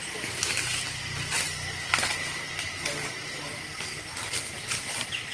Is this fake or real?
fake